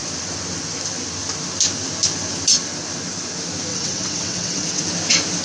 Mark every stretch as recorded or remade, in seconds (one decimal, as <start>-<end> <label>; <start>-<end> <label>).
0.0-3.7 recorded; 3.7-4.8 remade; 4.8-5.4 recorded